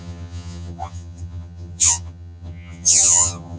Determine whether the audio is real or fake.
fake